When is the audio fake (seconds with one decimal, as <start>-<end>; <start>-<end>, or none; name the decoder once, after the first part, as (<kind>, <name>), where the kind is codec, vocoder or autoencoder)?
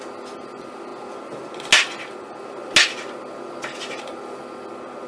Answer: none